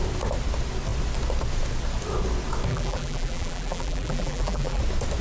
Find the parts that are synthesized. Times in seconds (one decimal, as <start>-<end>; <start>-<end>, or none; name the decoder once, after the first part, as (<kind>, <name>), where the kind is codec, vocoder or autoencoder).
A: 2.7-4.8 (vocoder, BigVGAN v2)

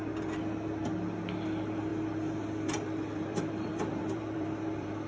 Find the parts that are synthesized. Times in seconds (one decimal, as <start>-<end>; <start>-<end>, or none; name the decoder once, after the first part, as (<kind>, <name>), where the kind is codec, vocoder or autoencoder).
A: 1.9-5.1 (vocoder, BigVGAN v2)

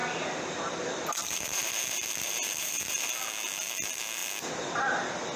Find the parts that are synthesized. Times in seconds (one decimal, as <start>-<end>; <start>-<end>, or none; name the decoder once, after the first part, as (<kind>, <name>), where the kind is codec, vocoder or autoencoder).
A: 0.0-3.1 (vocoder, BigVGAN v2)

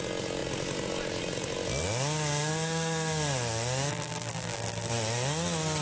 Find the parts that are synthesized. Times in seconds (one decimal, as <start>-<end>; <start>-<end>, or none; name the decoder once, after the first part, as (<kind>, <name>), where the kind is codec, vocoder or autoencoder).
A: 3.9-4.9 (vocoder, BigVGAN v2)

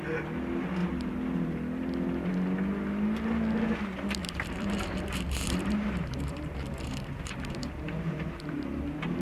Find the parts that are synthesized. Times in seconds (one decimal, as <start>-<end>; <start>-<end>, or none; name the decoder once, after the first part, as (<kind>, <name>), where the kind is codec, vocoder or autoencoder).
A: 4.2-9.2 (vocoder, BigVGAN v2)

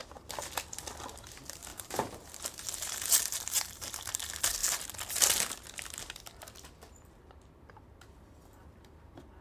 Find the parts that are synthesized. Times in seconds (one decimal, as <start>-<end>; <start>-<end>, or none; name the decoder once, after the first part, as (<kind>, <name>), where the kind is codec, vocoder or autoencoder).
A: 1.7-3.9 (vocoder, BigVGAN v2)

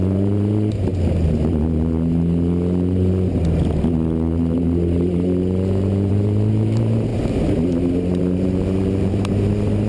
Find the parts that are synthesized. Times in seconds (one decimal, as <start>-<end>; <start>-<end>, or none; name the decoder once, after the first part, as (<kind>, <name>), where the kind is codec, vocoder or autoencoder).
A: 0.0-0.9 (vocoder, BigVGAN v2); 6.1-7.1; 8.2-9.9